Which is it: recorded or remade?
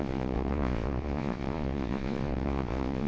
remade